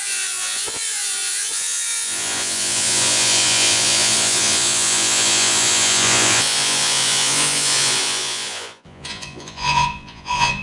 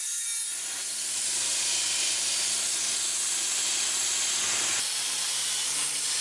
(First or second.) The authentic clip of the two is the second